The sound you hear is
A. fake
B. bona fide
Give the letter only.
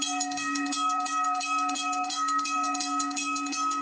A